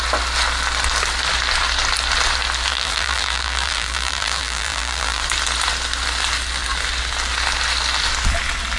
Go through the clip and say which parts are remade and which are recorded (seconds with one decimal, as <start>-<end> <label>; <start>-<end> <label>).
0.0-2.7 recorded; 2.7-5.2 remade; 5.2-8.8 recorded